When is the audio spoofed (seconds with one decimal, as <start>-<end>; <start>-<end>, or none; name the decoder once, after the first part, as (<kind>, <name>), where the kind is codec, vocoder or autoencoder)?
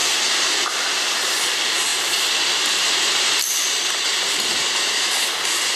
0.7-5.8 (vocoder, BigVGAN v2)